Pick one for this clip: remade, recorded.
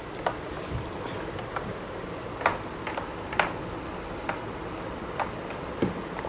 recorded